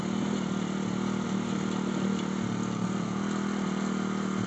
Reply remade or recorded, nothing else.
recorded